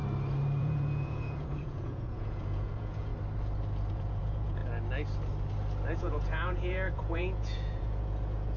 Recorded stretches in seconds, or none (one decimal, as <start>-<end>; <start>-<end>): 0.0-0.6; 3.1-3.9; 4.6-6.0